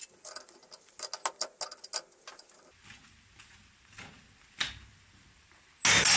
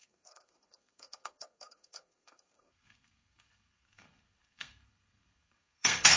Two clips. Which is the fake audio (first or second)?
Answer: second